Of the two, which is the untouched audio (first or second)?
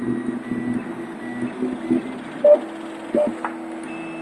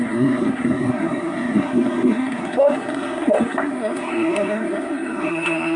first